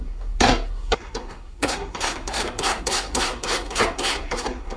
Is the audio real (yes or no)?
no